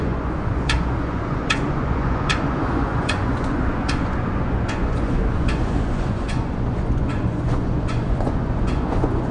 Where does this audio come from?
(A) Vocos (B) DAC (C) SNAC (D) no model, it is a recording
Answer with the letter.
A